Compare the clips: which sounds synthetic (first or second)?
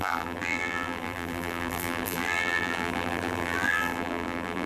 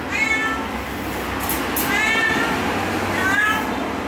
first